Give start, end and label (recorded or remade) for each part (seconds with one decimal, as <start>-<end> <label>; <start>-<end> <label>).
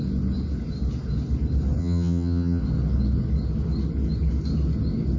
0.0-1.8 recorded; 1.8-2.6 remade; 2.6-5.2 recorded